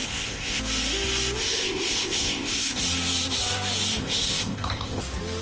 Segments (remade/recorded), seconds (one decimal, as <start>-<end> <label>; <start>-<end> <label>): 0.0-0.6 remade; 0.6-1.4 recorded; 1.4-2.8 remade; 2.8-4.0 recorded; 4.0-5.0 remade; 5.0-5.4 recorded